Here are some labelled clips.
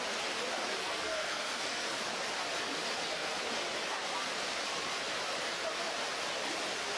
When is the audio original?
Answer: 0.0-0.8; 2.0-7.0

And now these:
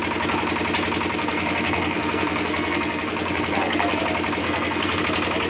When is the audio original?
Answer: 0.0-1.2; 4.0-4.4; 5.0-5.5

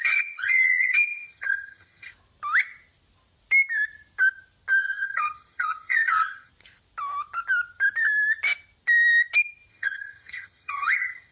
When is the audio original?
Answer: 2.1-4.8; 6.5-9.7

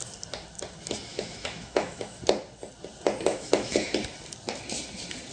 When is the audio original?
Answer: 0.0-1.1; 2.2-3.3; 3.9-5.3

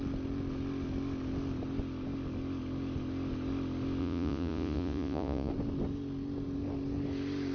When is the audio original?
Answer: 0.0-4.0; 5.5-7.5

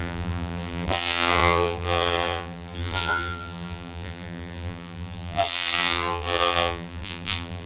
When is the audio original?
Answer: none

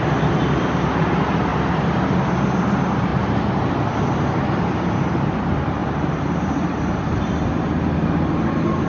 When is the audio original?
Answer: 0.0-3.1; 3.7-5.8; 7.3-8.9

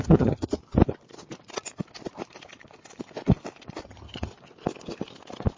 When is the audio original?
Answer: 0.6-3.8; 4.3-5.6